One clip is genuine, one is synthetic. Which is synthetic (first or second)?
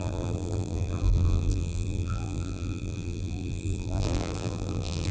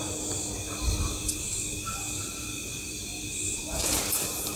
first